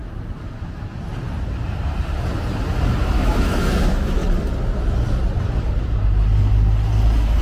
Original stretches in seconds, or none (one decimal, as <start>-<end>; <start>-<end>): 0.0-3.0; 4.2-7.4